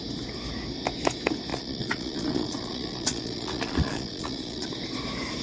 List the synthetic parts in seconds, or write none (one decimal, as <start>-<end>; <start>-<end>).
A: 1.5-4.7